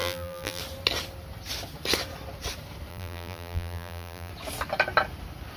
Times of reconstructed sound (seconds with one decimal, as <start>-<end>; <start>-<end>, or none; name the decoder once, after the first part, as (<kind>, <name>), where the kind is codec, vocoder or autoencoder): 0.0-0.6 (vocoder, BigVGAN v2); 2.9-4.3